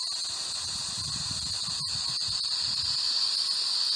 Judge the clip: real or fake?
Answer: real